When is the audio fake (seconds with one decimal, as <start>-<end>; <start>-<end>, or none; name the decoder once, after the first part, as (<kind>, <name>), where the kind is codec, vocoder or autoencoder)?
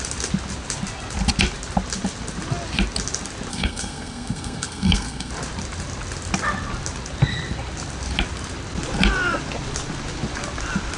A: 3.5-5.3 (codec, SNAC)